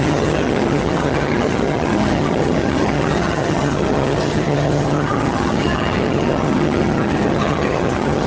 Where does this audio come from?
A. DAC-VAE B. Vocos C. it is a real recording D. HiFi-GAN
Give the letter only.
D